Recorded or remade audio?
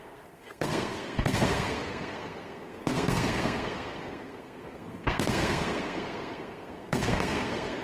remade